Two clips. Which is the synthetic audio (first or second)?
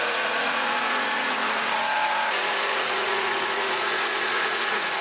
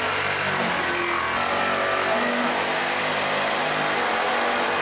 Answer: first